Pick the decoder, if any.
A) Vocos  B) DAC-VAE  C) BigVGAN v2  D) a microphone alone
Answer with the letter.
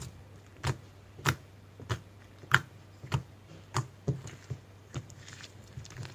C